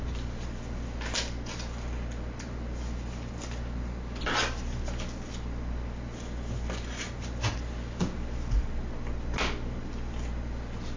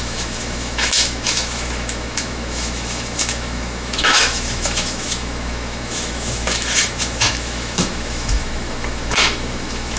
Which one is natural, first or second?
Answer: first